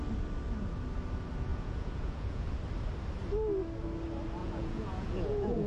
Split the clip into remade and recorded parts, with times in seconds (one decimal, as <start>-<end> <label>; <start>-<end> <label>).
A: 0.0-1.5 recorded; 1.5-2.5 remade; 2.5-4.4 recorded; 4.4-5.7 remade